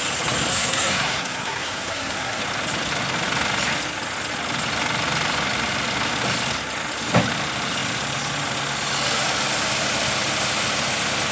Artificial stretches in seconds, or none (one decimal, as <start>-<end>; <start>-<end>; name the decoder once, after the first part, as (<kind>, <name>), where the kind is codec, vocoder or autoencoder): 0.5-2.4 (codec, SNAC)